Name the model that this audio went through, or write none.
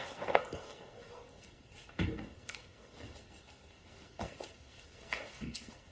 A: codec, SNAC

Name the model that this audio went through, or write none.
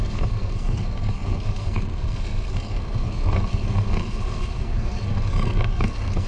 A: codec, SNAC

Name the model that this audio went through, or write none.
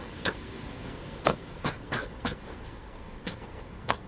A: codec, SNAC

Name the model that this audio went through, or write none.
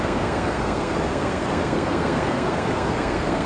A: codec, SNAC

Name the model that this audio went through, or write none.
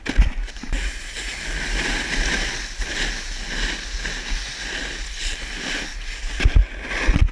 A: none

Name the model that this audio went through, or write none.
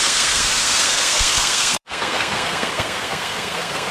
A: codec, SNAC